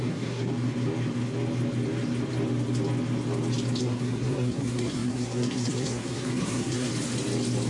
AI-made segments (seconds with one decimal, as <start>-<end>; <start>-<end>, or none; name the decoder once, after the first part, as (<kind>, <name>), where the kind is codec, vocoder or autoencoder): 0.0-0.5 (codec, SNAC); 3.8-6.9